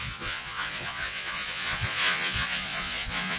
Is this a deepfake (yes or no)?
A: yes